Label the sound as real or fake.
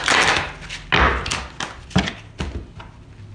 real